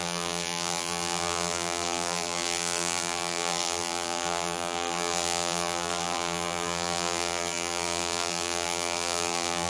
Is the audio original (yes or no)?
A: no